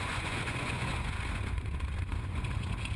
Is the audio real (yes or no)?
no